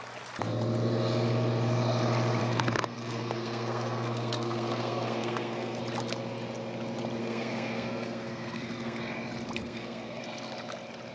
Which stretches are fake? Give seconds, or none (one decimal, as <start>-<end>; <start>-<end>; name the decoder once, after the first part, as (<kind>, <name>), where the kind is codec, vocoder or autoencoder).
2.4-5.8 (codec, SNAC); 7.2-9.0; 9.6-10.2